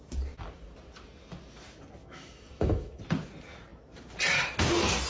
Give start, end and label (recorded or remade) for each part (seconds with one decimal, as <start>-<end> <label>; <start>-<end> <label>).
0.0-2.0 recorded; 2.0-3.0 remade; 3.0-5.1 recorded